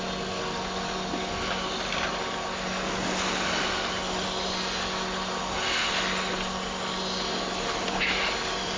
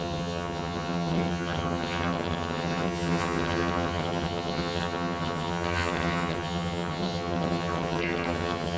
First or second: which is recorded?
first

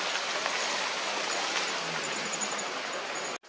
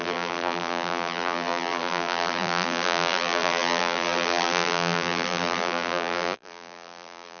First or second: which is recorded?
first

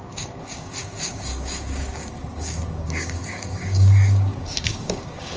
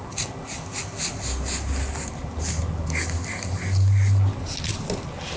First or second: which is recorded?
second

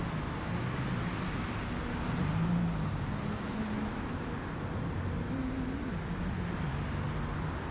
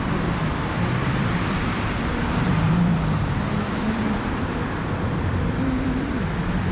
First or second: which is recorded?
first